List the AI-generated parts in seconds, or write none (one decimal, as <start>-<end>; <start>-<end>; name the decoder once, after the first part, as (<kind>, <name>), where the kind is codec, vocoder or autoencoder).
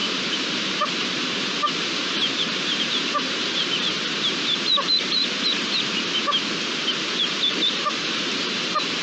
0.0-5.2 (vocoder, BigVGAN v2); 7.0-9.0